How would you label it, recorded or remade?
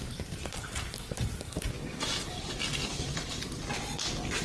recorded